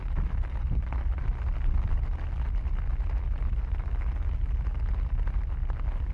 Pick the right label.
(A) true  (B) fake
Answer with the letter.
A